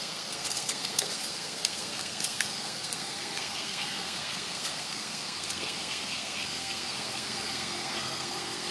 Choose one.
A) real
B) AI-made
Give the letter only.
B